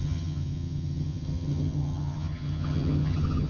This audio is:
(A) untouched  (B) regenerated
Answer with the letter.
B